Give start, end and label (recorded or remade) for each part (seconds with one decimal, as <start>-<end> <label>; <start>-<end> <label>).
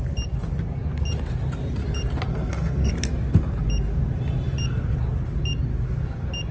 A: 0.0-2.3 recorded; 2.3-2.9 remade; 2.9-6.5 recorded